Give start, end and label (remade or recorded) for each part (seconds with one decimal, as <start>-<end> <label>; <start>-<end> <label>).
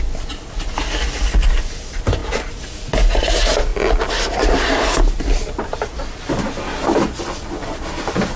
0.0-8.4 recorded